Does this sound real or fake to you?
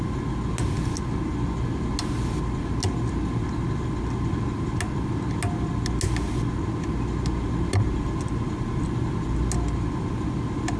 real